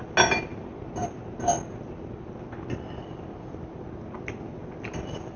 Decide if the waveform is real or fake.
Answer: real